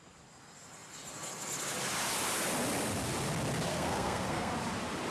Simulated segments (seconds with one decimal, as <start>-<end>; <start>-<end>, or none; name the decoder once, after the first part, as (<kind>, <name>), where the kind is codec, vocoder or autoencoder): 3.7-4.5 (codec, SNAC)